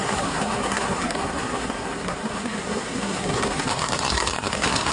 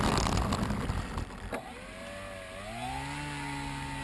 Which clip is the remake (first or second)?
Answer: first